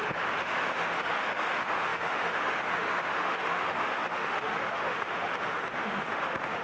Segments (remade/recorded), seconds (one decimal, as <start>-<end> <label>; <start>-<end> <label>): 0.0-6.6 remade